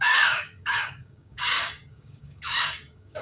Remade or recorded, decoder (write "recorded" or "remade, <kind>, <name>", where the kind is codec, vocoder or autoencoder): remade, codec, DAC